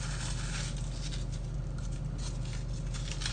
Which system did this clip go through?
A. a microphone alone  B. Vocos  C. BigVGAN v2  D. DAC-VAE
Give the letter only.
A